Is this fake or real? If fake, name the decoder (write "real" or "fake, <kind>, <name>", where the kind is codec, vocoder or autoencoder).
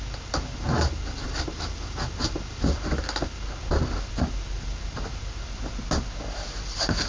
real